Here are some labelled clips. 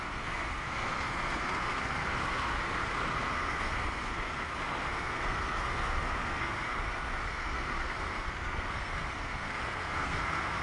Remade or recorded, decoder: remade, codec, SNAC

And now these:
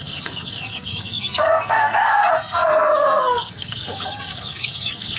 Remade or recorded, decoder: remade, codec, SNAC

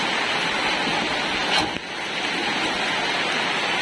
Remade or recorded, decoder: recorded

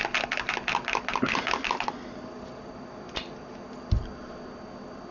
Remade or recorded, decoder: recorded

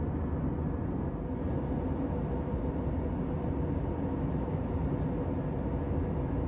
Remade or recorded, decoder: recorded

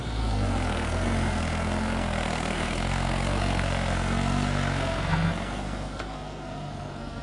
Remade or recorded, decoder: remade, codec, SNAC